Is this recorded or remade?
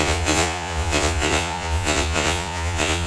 remade